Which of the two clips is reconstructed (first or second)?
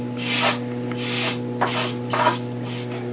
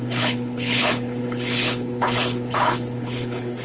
second